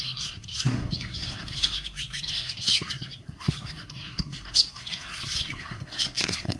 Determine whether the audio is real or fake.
fake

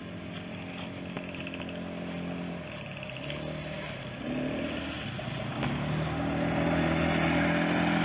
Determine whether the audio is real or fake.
real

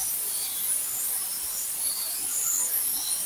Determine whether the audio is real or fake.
real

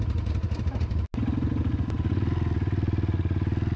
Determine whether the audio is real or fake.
real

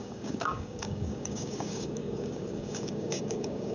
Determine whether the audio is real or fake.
fake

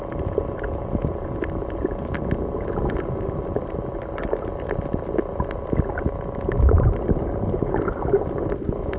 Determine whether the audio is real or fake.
real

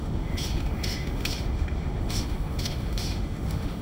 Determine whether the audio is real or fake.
fake